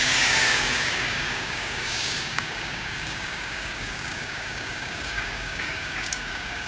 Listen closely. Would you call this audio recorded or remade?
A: remade